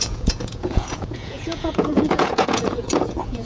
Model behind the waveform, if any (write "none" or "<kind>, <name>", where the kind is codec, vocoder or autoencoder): vocoder, Vocos